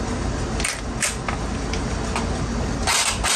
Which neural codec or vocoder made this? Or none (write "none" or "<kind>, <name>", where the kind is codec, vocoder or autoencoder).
none